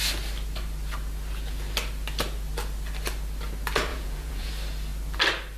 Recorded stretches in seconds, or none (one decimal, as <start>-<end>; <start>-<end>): 0.0-3.9; 4.5-5.6